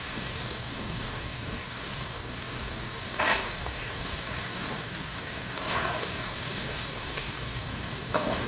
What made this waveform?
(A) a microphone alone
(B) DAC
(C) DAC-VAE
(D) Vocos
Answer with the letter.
B